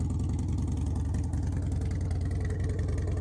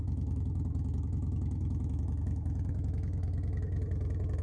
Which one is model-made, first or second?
second